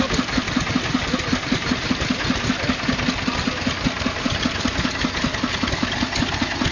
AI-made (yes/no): no